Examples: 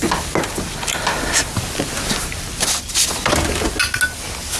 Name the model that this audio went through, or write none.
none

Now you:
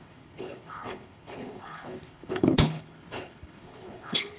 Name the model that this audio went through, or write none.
codec, HILCodec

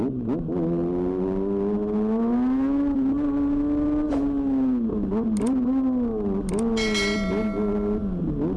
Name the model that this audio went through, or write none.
none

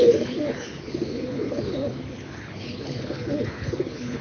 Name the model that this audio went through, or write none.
codec, HILCodec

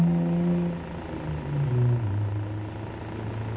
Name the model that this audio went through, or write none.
none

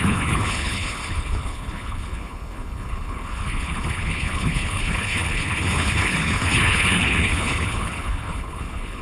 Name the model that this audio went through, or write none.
codec, HILCodec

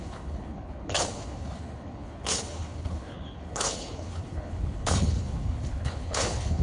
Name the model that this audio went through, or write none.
codec, HILCodec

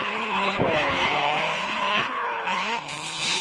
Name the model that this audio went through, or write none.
codec, HILCodec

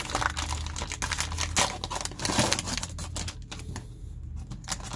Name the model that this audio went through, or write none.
none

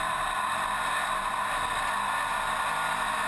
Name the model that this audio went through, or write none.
none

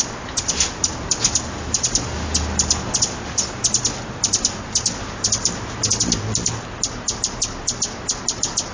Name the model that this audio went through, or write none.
none